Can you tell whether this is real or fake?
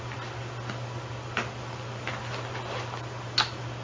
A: real